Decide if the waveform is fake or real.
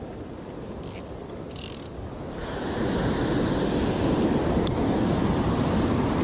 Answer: real